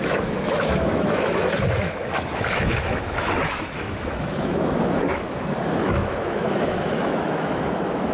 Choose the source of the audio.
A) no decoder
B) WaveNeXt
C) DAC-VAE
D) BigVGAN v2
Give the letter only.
C